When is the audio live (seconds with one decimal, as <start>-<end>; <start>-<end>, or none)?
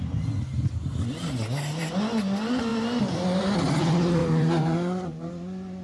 0.0-4.2; 5.3-5.8